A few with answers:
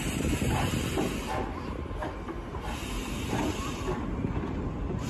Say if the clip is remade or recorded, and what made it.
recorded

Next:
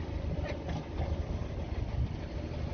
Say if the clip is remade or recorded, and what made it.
recorded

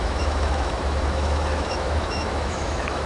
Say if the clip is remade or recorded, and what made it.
remade, autoencoder, DAC-VAE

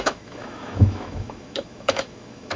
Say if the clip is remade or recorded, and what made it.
remade, autoencoder, DAC-VAE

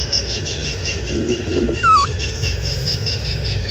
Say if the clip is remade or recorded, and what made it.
remade, autoencoder, DAC-VAE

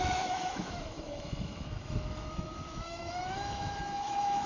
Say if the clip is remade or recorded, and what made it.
remade, autoencoder, DAC-VAE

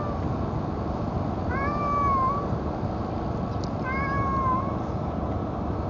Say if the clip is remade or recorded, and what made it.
recorded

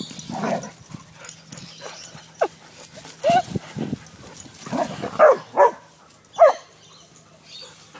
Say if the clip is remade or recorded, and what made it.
recorded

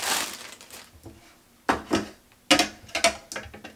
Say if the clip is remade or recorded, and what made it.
recorded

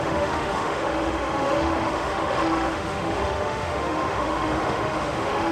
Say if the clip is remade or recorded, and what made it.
remade, autoencoder, DAC-VAE